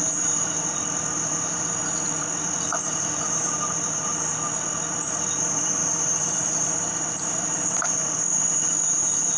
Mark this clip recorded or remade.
remade